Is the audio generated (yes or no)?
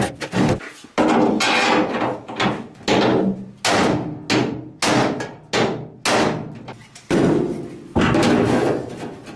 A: no